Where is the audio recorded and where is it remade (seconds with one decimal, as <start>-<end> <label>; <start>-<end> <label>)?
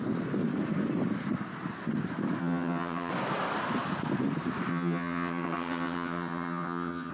0.0-2.4 recorded; 2.4-3.1 remade; 3.1-4.7 recorded; 4.7-7.1 remade